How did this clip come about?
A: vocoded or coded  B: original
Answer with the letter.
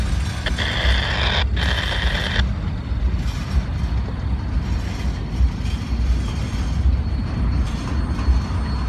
B